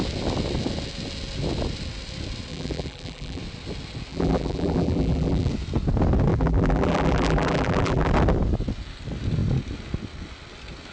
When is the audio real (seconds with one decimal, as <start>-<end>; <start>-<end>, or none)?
0.0-2.5; 3.4-4.1; 5.5-6.3; 8.1-10.9